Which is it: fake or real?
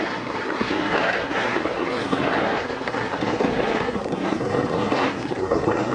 fake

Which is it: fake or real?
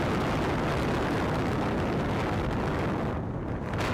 real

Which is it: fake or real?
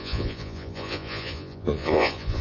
fake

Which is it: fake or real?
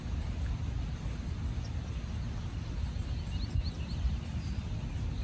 real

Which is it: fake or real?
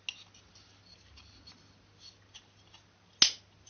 real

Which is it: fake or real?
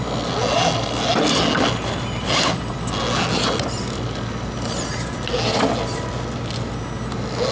real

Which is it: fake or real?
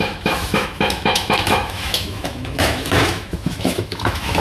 fake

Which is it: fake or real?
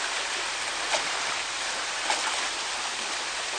real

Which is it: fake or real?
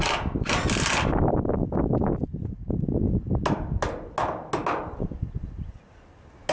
real